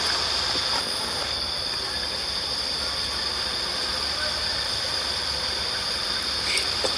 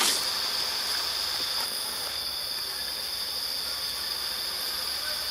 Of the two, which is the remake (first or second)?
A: first